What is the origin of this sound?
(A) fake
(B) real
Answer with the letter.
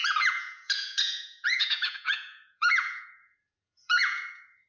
A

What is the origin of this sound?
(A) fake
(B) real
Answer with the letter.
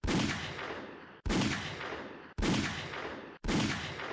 A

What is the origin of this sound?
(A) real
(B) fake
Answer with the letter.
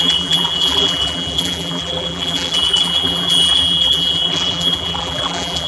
B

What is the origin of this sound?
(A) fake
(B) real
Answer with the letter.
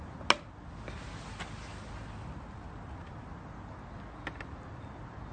B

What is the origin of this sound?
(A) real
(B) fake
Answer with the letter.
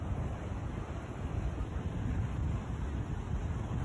A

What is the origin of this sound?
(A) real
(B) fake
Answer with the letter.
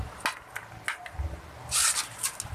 A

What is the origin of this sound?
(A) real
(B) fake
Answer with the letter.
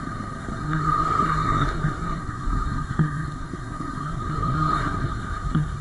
B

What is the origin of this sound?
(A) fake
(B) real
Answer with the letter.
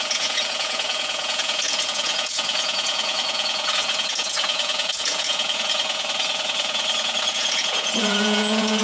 A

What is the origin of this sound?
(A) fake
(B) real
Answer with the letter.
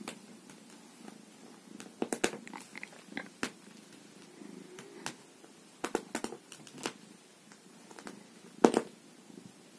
B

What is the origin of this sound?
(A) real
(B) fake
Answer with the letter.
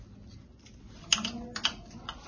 A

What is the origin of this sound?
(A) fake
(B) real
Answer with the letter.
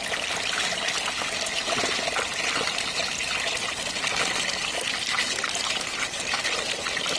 B